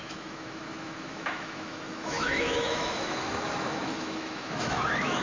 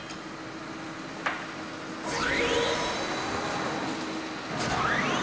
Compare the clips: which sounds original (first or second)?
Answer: second